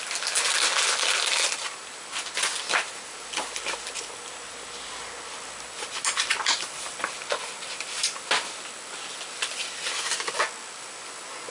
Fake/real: real